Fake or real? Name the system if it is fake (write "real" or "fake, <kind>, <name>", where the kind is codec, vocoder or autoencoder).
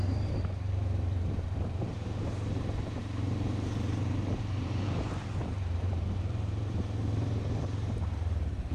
fake, vocoder, BigVGAN v2